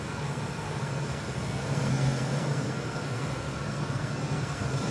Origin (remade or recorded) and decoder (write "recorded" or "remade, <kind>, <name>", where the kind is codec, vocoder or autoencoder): remade, codec, SNAC